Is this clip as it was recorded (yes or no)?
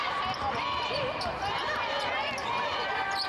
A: yes